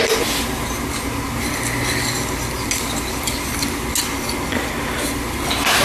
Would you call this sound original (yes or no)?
yes